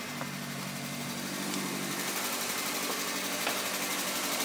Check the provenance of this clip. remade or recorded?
recorded